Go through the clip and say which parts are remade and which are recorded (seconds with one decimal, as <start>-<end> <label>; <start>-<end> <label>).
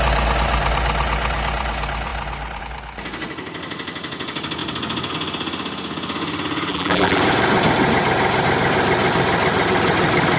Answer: 0.0-6.7 recorded; 6.7-7.2 remade; 7.2-10.4 recorded